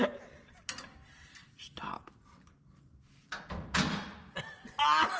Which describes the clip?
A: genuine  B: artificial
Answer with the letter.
A